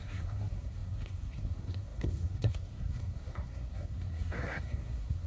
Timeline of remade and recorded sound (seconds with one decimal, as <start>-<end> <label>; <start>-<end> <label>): 0.0-5.3 remade